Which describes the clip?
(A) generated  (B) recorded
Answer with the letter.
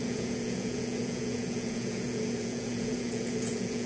A